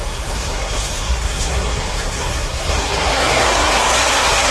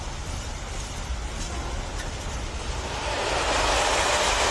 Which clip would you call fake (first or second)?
first